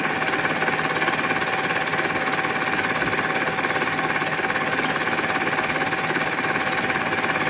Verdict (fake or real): real